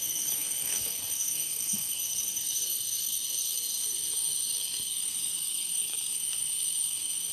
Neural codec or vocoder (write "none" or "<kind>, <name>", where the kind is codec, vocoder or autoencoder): codec, SNAC